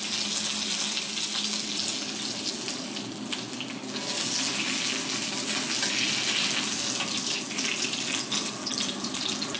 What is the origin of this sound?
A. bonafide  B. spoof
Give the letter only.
A